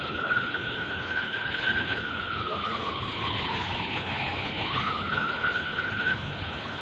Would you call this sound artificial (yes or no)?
yes